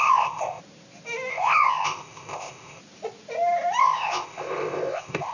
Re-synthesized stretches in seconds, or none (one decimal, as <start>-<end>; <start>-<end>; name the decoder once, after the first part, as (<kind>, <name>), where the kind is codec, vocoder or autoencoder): 0.0-0.6 (codec, ZipCodec); 1.3-2.8; 3.8-5.3